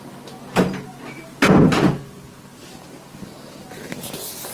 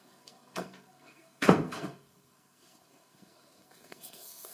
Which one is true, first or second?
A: first